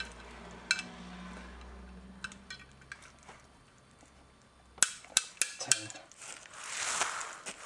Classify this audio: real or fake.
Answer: real